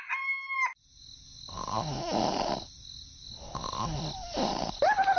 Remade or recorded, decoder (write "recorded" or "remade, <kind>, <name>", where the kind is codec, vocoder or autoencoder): recorded